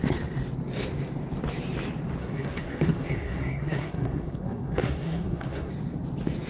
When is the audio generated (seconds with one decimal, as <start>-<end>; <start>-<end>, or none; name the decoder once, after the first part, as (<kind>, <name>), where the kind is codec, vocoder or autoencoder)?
2.2-5.7 (codec, SNAC)